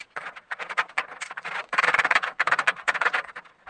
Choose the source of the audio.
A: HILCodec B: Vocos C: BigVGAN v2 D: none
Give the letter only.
B